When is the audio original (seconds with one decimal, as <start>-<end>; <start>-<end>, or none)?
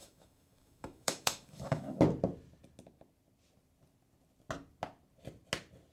2.0-5.9